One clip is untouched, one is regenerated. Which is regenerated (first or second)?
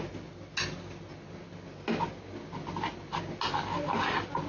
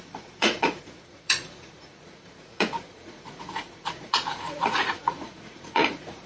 second